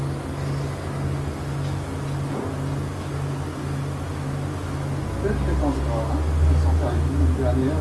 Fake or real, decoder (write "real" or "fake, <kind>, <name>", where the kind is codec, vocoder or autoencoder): real